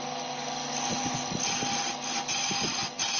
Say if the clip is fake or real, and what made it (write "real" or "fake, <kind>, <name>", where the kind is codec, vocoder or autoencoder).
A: real